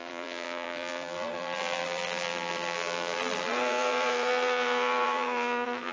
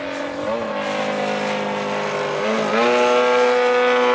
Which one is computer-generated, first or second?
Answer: first